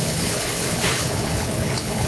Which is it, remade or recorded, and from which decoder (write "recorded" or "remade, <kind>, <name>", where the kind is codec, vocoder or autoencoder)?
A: remade, codec, HILCodec